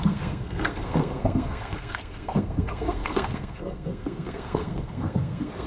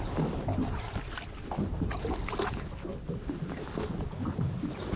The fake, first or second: first